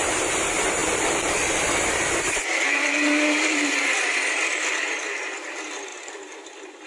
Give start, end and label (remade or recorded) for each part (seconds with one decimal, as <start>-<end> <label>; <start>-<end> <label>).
0.0-0.8 recorded; 0.8-4.9 remade; 4.9-5.9 recorded; 5.9-6.9 remade

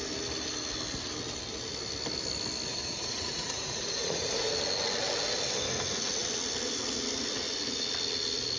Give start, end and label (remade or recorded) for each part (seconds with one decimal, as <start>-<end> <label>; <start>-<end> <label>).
0.0-2.7 recorded; 2.7-4.5 remade; 4.5-8.6 recorded

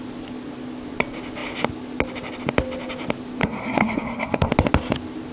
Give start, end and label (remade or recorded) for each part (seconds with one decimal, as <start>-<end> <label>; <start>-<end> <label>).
0.0-3.4 recorded; 3.4-4.5 remade; 4.5-5.3 recorded

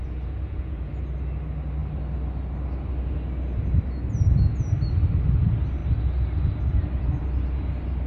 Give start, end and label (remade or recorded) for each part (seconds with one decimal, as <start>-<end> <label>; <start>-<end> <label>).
0.0-0.9 remade; 0.9-8.1 recorded

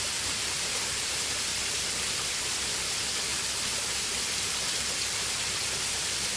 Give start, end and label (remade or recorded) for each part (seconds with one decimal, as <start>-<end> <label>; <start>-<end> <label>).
0.0-1.5 recorded; 1.5-2.4 remade; 2.4-6.4 recorded

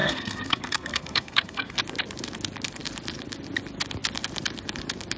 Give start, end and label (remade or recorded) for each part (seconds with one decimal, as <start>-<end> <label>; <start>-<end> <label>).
0.0-1.8 remade; 1.8-5.2 recorded